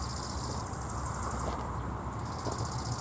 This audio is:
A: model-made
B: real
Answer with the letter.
A